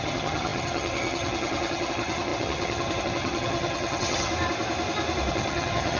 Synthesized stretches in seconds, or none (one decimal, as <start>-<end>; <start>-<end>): 0.0-4.3; 5.3-6.0